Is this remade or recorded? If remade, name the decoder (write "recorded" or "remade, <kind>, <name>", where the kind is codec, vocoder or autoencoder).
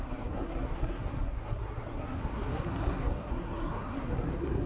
remade, codec, SNAC